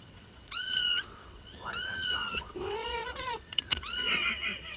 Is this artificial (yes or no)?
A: yes